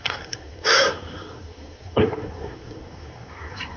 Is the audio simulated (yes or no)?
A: yes